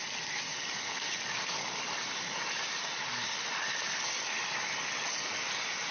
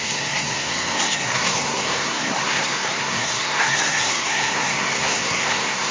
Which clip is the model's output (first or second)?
second